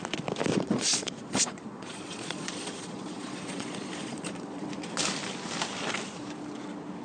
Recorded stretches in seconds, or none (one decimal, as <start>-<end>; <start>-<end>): 0.0-0.5; 4.7-7.0